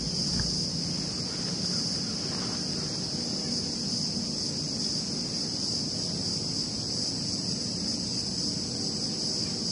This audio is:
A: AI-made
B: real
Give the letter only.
B